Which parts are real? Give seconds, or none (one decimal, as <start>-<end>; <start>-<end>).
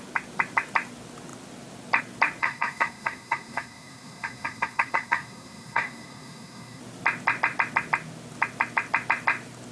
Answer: 0.0-2.4; 6.8-9.7